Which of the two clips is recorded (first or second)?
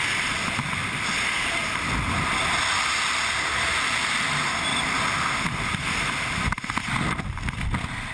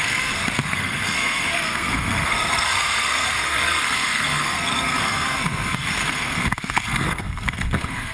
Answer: first